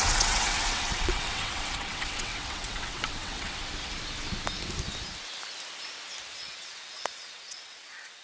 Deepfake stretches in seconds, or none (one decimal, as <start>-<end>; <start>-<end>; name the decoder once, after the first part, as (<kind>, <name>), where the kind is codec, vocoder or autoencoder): 0.0-3.6 (vocoder, WaveNeXt); 6.2-8.2